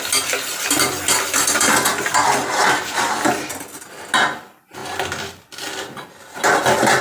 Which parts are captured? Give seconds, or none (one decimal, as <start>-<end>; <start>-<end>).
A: 0.0-7.0